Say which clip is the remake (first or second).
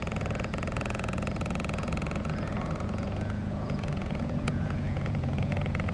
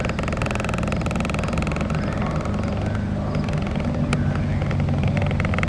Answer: first